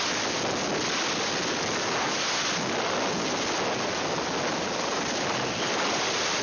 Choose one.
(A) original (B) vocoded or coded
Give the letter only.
A